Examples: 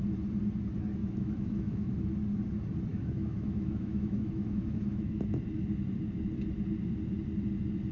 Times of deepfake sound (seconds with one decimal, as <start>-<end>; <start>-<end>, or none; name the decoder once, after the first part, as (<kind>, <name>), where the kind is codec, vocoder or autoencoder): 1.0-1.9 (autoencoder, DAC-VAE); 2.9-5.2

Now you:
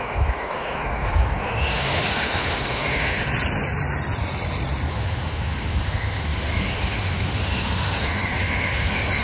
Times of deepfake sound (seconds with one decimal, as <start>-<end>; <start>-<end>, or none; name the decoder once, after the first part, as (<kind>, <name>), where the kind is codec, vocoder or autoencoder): 0.0-3.3 (autoencoder, DAC-VAE); 4.9-9.2

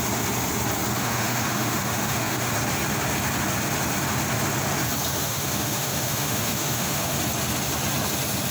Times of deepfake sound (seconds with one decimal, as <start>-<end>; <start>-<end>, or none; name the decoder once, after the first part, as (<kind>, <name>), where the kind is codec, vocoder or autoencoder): 1.0-2.5 (autoencoder, DAC-VAE); 5.1-7.2

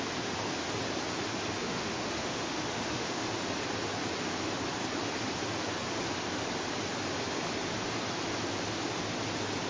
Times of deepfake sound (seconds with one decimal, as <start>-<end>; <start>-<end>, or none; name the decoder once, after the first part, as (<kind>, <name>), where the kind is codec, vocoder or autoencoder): 1.6-3.3 (autoencoder, DAC-VAE)

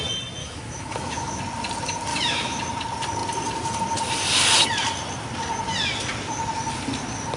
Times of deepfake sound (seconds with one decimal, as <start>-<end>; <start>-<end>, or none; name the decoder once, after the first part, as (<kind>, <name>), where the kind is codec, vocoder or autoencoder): 0.4-1.4 (autoencoder, DAC-VAE); 2.1-2.6